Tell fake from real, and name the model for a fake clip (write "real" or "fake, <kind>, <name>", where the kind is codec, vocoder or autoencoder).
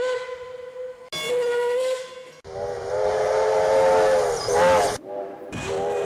real